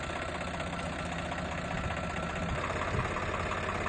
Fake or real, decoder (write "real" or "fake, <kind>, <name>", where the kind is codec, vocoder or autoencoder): real